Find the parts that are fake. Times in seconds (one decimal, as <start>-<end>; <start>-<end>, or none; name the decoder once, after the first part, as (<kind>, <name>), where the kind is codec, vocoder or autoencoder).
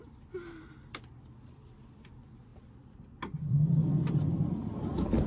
none